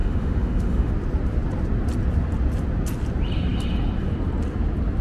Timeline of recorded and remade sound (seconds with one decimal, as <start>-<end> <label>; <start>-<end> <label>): 0.0-0.9 remade; 0.9-5.0 recorded